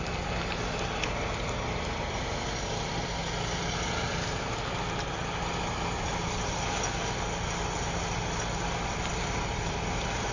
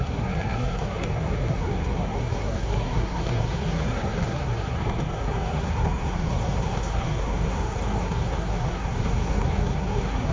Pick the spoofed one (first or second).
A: second